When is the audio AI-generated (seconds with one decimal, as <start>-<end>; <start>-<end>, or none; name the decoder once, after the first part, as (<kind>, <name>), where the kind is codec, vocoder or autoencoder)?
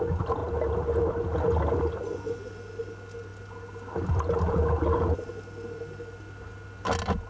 none